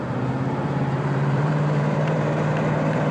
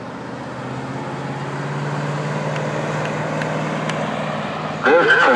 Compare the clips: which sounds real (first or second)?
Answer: second